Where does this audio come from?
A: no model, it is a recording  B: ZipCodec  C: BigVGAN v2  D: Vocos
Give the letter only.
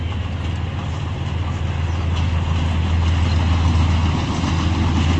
A